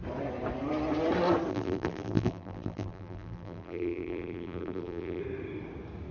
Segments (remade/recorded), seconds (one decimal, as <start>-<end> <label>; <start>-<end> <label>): 0.0-1.5 recorded; 1.5-5.2 remade; 5.2-6.1 recorded